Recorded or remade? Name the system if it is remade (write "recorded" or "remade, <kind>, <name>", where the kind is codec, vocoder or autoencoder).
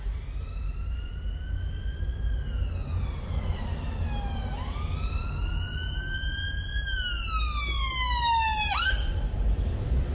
recorded